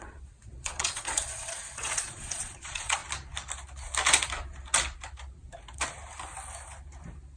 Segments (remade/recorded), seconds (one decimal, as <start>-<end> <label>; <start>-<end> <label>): 0.0-3.0 remade; 3.0-7.4 recorded